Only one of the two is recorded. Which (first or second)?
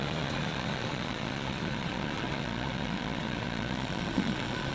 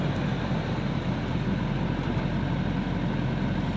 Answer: second